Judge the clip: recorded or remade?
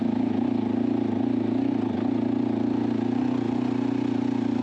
recorded